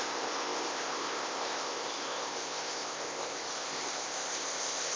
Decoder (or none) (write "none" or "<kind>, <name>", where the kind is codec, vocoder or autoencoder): codec, ZipCodec